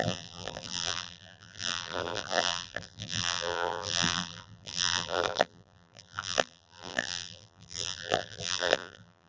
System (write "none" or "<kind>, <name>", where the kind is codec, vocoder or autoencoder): vocoder, BigVGAN v2